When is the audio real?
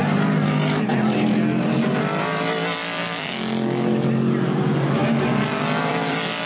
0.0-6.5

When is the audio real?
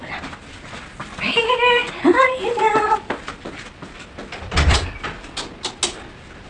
0.0-6.5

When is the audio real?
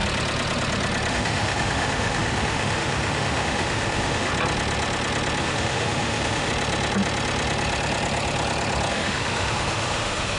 0.0-1.1; 4.3-5.4; 6.5-8.9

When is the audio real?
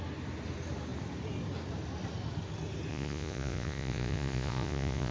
0.0-2.9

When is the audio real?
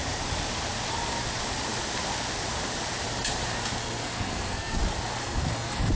0.0-3.8; 4.8-5.2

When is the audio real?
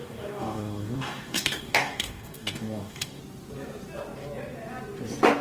3.2-5.4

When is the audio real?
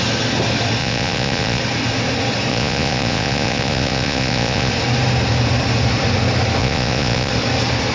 0.0-0.8; 1.6-2.5; 4.7-6.6; 7.3-7.9